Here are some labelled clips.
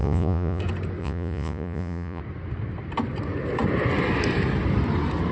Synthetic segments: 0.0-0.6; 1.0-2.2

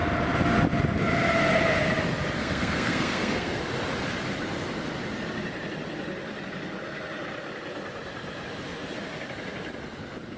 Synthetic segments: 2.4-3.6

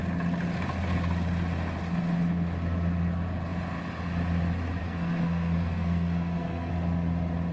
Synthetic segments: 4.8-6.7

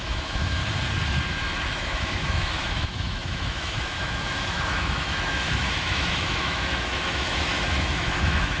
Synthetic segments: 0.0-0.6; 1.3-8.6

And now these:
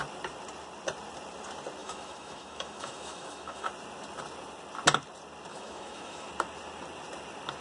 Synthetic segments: 1.8-3.7; 5.5-6.3